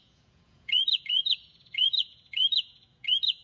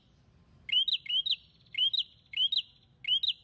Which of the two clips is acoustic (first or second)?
second